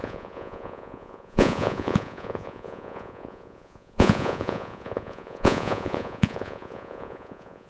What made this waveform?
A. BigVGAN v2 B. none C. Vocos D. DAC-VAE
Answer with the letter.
C